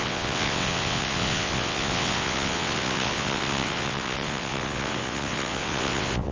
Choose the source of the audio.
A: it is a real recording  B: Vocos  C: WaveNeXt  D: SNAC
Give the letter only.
C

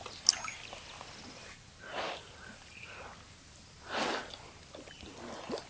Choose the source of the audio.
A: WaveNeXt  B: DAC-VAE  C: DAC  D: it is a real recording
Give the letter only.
D